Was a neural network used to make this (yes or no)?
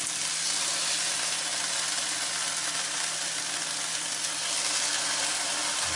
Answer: no